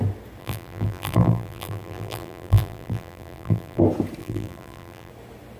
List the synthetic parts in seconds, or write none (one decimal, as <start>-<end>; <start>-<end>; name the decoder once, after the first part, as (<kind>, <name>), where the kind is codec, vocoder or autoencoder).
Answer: 0.4-3.8 (vocoder, BigVGAN v2); 4.2-5.1